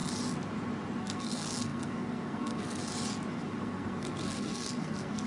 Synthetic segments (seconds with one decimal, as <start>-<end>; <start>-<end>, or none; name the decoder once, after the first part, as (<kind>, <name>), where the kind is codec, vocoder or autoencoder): 1.0-2.8 (codec, SNAC); 3.6-5.3

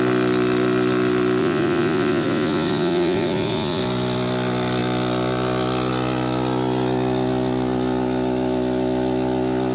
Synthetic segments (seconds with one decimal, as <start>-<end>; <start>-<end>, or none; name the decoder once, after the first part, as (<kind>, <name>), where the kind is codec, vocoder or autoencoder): 1.4-3.8 (vocoder, Vocos)